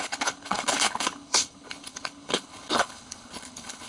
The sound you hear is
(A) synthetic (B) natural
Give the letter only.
A